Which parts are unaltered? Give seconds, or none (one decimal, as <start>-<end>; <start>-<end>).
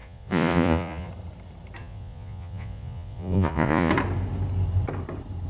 1.1-1.8; 3.9-5.5